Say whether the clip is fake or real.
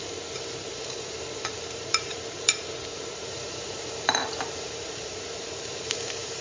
fake